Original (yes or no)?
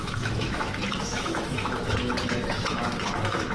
no